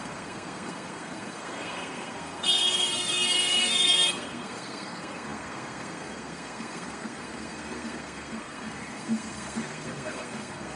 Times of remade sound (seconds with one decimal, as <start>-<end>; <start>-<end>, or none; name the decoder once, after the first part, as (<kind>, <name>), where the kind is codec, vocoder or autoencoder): 0.0-10.8 (codec, SNAC)